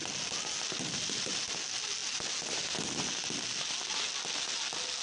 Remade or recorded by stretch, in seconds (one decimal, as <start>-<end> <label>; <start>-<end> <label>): 0.0-5.0 recorded